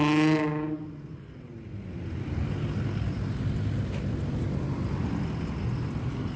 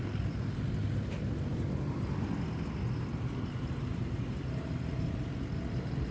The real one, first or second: first